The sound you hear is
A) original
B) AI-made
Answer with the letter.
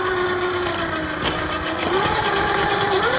A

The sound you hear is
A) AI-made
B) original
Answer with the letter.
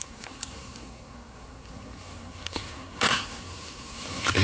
A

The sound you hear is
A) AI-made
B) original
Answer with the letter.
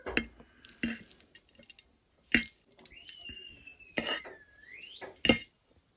B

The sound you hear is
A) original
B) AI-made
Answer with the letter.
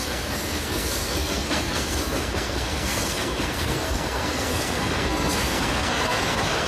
B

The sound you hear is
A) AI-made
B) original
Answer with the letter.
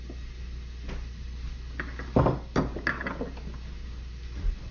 B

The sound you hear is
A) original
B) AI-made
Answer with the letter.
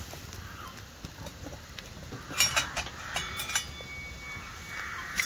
A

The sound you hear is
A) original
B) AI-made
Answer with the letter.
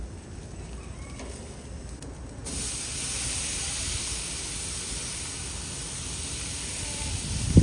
A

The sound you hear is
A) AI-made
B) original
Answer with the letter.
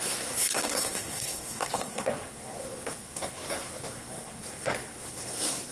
A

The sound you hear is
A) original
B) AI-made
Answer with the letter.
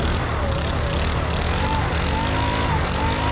A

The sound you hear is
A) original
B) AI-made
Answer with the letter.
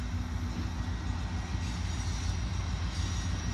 A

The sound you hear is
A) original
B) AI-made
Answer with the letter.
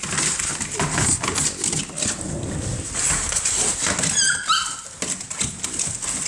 A